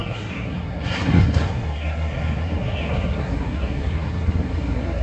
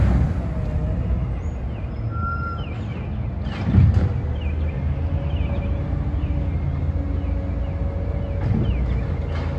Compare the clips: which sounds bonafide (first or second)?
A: second